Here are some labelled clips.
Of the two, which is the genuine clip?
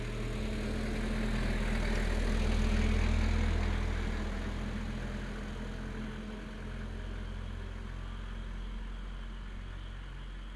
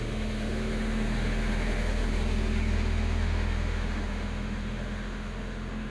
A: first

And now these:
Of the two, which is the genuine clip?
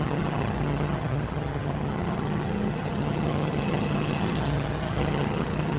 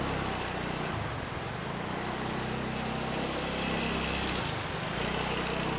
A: second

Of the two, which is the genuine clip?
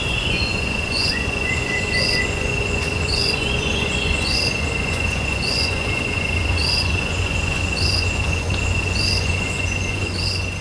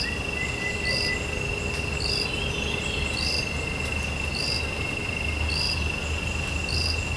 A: second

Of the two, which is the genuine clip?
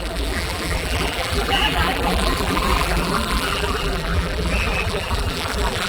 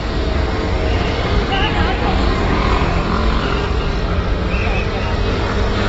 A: second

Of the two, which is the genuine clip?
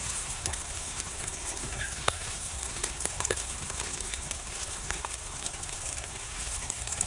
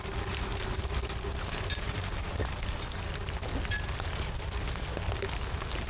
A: second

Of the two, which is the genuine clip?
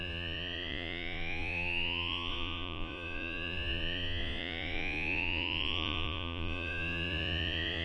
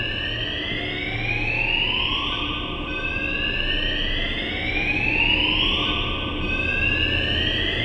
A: second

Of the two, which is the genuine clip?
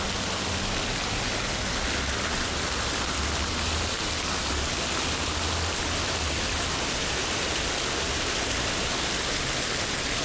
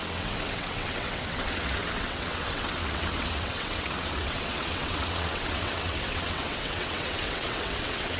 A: first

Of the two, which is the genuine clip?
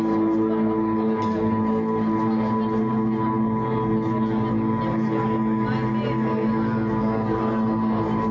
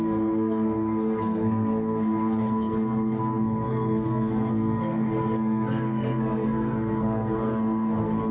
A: first